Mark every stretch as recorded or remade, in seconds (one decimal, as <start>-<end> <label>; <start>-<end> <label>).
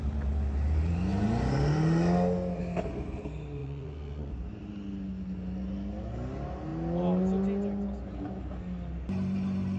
0.0-3.6 recorded; 3.6-4.3 remade; 4.3-9.8 recorded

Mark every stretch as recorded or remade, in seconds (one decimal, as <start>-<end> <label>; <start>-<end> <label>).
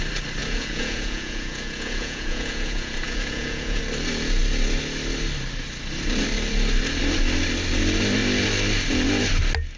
0.0-0.4 recorded; 0.4-3.8 remade; 3.8-9.8 recorded